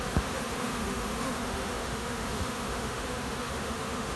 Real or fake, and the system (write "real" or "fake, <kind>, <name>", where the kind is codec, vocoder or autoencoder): fake, autoencoder, DAC-VAE